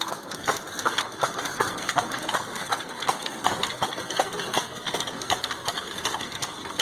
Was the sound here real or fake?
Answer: fake